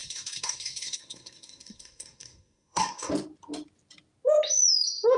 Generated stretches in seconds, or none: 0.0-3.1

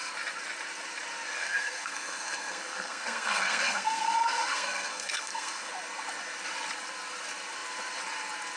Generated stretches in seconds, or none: 1.4-5.7

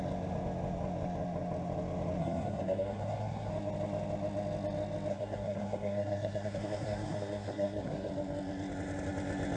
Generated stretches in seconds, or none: 2.2-3.5; 5.1-8.1

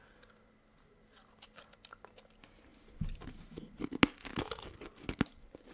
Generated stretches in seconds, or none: none